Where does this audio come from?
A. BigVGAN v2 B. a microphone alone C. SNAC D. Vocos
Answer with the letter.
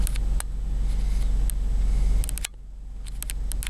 B